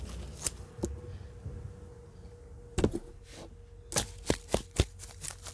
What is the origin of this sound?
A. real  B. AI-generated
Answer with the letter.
A